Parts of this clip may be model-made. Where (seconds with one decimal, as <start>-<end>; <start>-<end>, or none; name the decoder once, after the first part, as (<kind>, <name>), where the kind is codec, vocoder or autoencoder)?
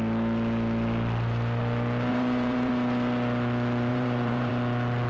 2.1-2.7 (vocoder, BigVGAN v2); 3.9-4.5